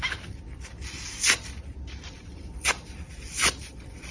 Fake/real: real